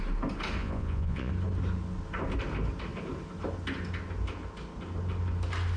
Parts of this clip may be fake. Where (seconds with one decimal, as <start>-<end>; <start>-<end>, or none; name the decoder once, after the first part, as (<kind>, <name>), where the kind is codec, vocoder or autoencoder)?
0.6-1.3 (vocoder, Vocos)